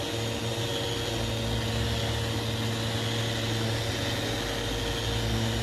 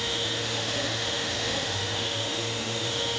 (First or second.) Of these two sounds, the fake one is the second